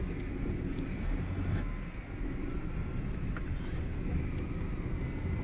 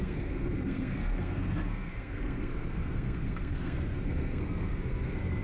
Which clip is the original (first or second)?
first